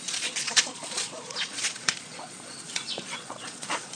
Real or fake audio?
fake